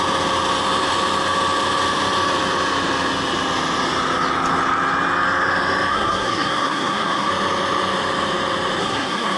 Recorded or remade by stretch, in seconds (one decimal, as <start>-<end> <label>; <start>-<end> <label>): 0.0-5.9 recorded; 5.9-7.3 remade; 7.3-8.8 recorded; 8.8-9.4 remade

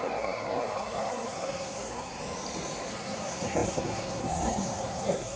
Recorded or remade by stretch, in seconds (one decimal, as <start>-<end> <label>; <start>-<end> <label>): 0.0-2.2 remade; 2.2-2.9 recorded; 2.9-5.4 remade

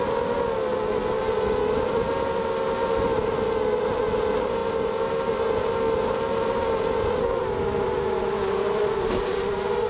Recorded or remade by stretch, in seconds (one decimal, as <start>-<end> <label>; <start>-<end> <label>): 0.0-9.9 recorded

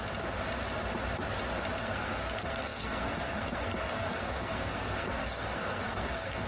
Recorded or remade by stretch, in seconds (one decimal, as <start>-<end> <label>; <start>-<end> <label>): 0.0-1.8 recorded; 1.8-6.5 remade